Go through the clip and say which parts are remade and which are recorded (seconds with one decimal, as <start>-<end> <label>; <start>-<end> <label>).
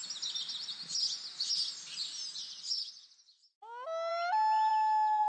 0.0-5.3 recorded